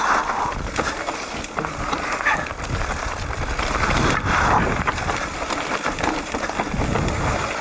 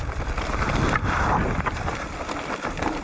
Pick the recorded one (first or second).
first